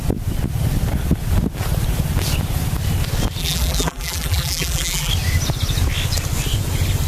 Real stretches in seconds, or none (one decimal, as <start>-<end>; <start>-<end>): 0.0-3.4; 5.1-7.1